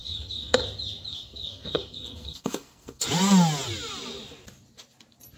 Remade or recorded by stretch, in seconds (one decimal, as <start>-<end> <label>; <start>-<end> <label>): 0.0-0.6 remade; 0.6-1.1 recorded; 1.1-3.0 remade; 3.0-5.4 recorded